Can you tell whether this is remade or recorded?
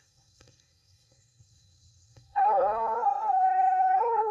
remade